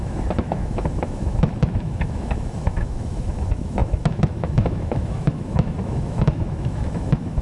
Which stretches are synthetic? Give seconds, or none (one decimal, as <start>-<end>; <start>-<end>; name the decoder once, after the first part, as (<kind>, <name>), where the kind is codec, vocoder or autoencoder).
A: 0.0-7.4 (autoencoder, DAC-VAE)